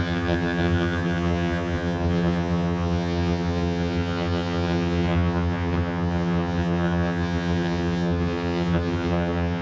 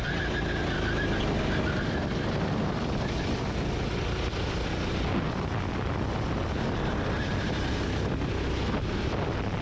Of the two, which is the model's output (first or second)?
first